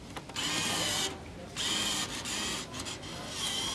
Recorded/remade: recorded